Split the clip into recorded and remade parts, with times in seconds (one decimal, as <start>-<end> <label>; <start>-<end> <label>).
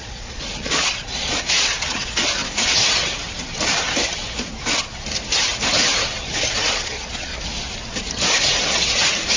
0.0-2.4 remade; 2.4-6.7 recorded; 6.7-7.3 remade; 7.3-9.4 recorded